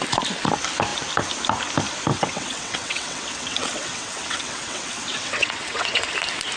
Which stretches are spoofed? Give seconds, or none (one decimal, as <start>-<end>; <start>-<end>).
2.1-6.1